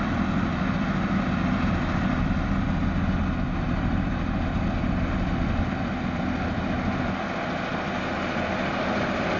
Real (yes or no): yes